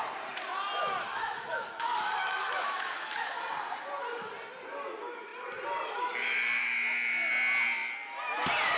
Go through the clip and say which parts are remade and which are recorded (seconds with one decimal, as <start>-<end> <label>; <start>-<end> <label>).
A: 0.0-1.1 recorded; 1.1-3.4 remade; 3.4-6.6 recorded; 6.6-7.3 remade; 7.3-8.8 recorded